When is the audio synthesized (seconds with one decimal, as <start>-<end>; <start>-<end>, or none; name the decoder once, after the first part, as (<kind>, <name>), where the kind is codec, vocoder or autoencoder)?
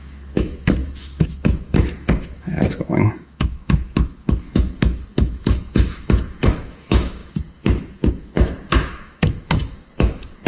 0.0-10.5 (autoencoder, DAC-VAE)